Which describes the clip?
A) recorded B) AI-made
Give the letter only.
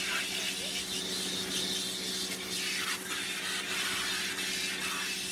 A